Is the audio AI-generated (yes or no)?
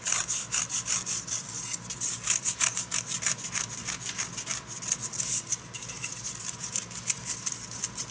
no